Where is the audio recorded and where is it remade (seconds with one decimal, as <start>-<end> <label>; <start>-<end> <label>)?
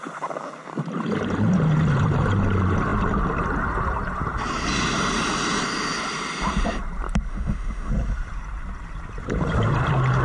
0.0-7.3 recorded; 7.3-7.9 remade; 7.9-10.2 recorded